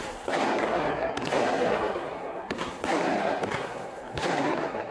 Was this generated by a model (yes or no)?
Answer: yes